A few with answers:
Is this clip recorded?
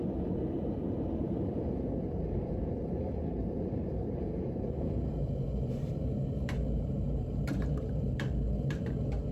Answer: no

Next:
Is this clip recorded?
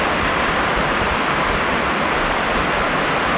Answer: yes